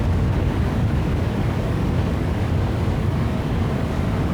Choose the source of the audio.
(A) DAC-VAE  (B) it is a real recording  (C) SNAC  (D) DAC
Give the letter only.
D